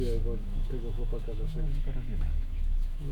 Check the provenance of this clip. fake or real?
fake